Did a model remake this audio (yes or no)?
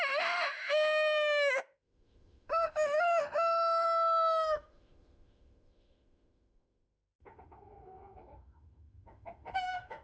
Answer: yes